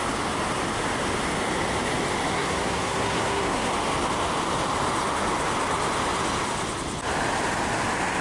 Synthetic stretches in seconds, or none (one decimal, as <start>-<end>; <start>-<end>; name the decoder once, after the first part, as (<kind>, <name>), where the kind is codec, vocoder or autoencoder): 2.3-3.7 (codec, SNAC)